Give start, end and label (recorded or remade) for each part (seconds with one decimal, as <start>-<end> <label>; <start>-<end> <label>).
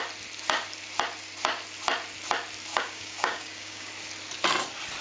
0.0-2.7 recorded; 2.7-3.9 remade; 3.9-5.0 recorded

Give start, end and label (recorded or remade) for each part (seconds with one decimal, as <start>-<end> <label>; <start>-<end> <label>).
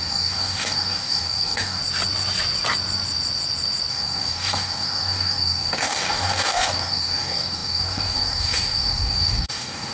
0.0-1.8 remade; 1.8-3.9 recorded; 3.9-9.9 remade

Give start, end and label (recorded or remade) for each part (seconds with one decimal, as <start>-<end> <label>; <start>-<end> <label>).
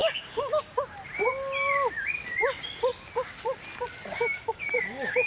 0.0-0.8 remade; 0.8-4.3 recorded; 4.3-5.3 remade